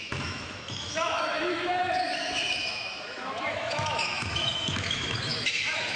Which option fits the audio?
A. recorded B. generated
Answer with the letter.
B